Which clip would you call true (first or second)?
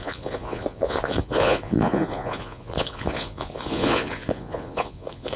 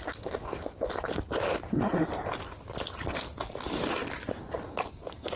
second